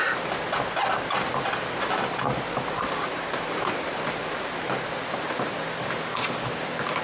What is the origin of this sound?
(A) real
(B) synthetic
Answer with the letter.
A